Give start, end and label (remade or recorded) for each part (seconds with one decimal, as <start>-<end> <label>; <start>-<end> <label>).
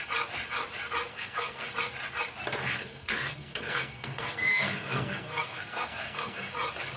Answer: 0.0-1.1 recorded; 1.1-1.7 remade; 1.7-2.6 recorded; 2.6-6.5 remade; 6.5-7.0 recorded